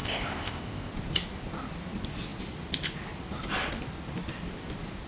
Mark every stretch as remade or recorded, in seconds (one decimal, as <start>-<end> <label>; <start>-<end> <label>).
0.0-0.9 remade; 0.9-5.1 recorded